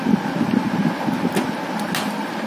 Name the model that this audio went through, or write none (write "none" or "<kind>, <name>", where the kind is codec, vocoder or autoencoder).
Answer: none